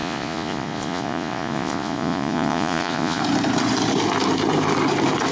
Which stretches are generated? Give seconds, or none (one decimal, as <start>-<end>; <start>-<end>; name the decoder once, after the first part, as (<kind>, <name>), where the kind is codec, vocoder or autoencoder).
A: 0.0-3.2 (vocoder, Vocos)